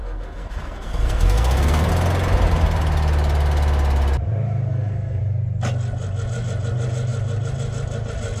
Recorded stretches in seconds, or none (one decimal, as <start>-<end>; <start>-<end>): 1.9-4.7; 5.2-8.4